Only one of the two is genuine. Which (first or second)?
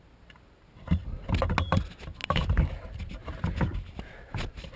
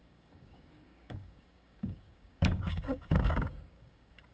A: first